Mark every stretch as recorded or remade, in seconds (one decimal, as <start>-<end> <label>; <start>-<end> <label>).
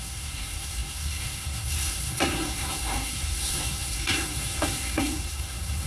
0.0-5.9 remade